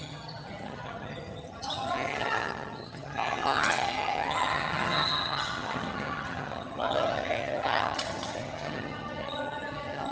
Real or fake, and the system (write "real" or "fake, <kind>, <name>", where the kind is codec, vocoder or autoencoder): fake, vocoder, HiFi-GAN